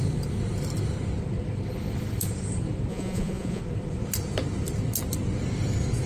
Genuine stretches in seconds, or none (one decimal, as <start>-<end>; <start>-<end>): 0.0-2.9; 3.6-6.1